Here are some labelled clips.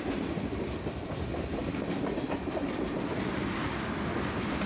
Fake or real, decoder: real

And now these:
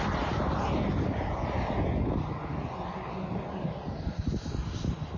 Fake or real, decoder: real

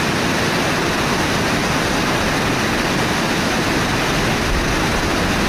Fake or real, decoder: real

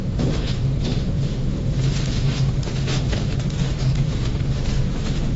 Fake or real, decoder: fake, autoencoder, DAC-VAE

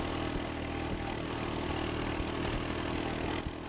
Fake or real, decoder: real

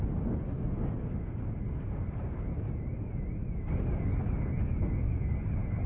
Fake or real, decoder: real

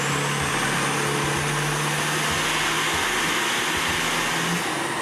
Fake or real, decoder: real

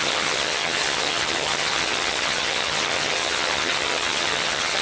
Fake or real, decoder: fake, vocoder, HiFi-GAN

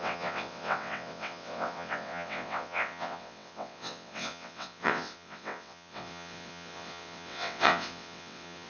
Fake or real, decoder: fake, vocoder, WaveNeXt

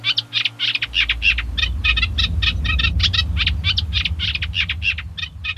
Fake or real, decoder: real